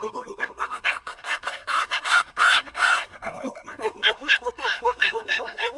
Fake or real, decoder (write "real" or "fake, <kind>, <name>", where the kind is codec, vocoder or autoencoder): fake, codec, SNAC